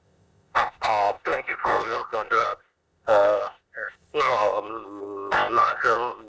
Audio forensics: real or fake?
fake